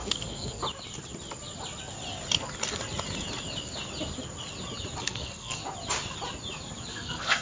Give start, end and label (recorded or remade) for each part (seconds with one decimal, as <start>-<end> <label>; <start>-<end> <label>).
0.0-0.6 remade; 0.6-5.0 recorded; 5.0-5.6 remade; 5.6-6.9 recorded; 6.9-7.4 remade